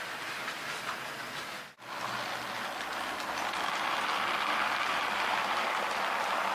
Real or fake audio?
real